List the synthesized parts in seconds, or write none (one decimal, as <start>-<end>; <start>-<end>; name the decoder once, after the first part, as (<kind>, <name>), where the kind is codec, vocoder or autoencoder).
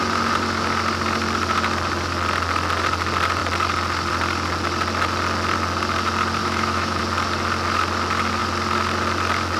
6.4-7.0 (autoencoder, DAC-VAE)